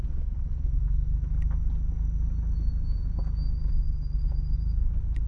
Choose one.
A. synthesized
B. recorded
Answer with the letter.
B